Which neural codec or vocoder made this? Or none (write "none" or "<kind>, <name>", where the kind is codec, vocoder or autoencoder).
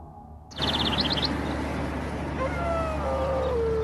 none